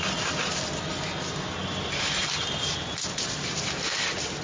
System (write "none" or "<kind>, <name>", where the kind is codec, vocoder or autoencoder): none